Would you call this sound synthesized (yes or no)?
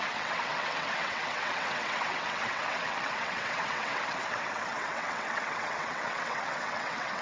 yes